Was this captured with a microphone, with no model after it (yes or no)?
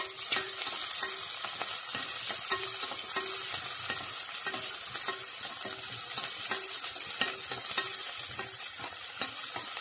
yes